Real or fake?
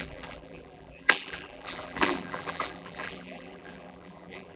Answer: fake